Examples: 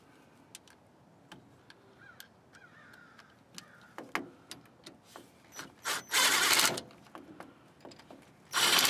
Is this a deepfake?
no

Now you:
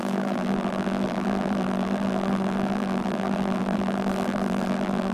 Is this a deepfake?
yes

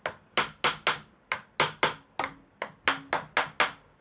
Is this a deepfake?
no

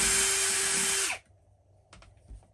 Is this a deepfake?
no